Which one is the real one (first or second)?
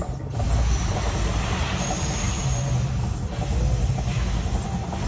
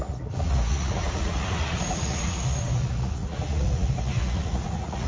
first